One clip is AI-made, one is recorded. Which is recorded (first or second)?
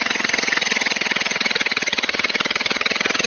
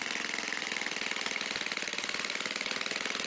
second